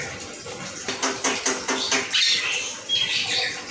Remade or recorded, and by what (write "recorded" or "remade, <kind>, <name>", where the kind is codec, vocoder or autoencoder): recorded